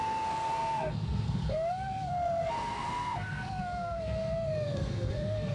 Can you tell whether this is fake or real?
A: fake